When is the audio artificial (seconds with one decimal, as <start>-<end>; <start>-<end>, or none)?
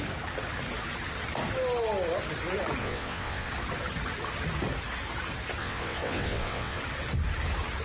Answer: 2.8-3.5; 5.6-6.8